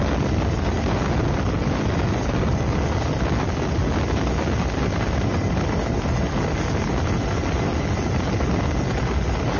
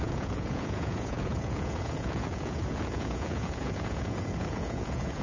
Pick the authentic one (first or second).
first